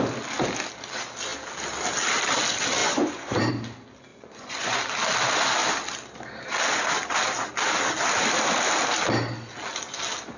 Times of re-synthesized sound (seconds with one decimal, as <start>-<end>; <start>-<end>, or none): 2.8-3.5; 4.1-4.8